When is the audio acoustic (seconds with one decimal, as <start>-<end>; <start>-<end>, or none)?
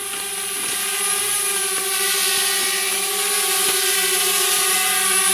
0.0-0.8; 2.6-3.5